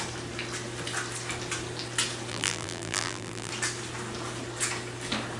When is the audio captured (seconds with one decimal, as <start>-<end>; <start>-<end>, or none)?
0.0-2.3; 3.5-5.4